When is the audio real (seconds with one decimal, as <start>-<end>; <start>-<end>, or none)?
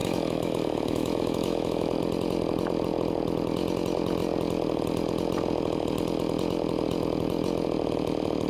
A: 2.0-8.5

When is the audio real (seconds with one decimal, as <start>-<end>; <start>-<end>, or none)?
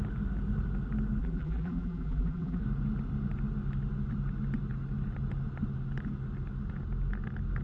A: 0.0-1.2; 2.6-7.6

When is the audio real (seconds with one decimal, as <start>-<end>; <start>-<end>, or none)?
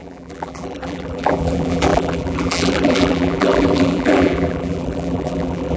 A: none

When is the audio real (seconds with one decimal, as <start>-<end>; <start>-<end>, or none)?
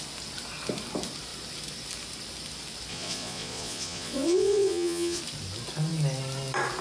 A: 0.0-2.9; 5.2-6.8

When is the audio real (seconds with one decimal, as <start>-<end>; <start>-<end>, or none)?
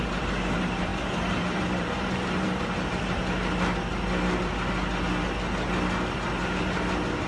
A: 3.2-7.3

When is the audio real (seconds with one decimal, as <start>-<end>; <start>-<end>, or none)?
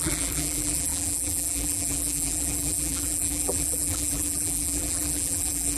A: none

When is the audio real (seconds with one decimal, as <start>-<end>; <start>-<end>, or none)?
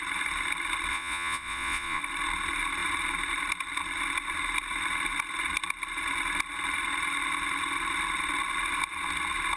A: 0.0-0.9; 2.0-9.6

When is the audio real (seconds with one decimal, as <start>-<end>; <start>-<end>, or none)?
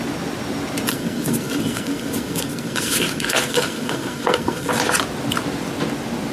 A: 0.0-0.9; 4.7-6.3